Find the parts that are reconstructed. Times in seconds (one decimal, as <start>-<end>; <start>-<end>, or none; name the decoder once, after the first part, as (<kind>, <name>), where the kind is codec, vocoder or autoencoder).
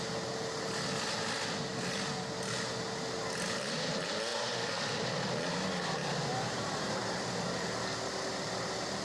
none